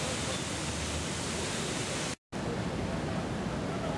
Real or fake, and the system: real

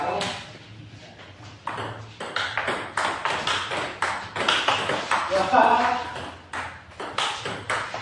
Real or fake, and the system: fake, vocoder, BigVGAN v2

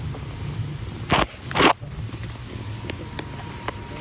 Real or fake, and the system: real